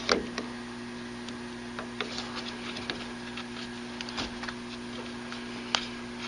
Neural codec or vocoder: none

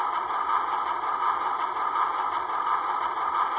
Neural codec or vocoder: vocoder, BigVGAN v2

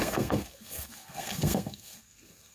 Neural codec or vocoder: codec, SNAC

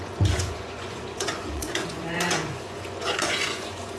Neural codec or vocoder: vocoder, Vocos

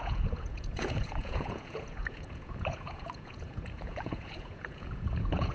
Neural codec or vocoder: vocoder, Vocos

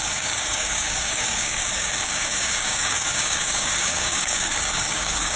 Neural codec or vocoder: codec, DAC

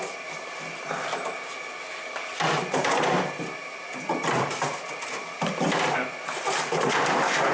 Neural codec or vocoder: vocoder, BigVGAN v2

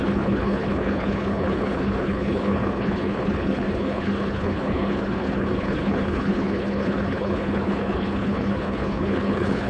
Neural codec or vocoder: codec, HILCodec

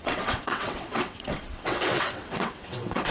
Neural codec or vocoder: vocoder, WaveNeXt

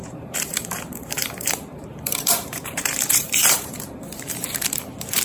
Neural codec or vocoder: vocoder, BigVGAN v2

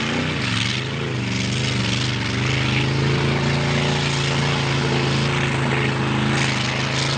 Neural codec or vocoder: none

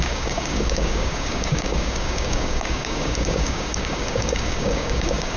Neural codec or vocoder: codec, DAC